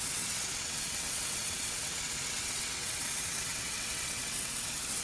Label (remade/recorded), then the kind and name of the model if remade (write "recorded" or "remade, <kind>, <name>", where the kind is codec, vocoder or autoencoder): remade, vocoder, WaveNeXt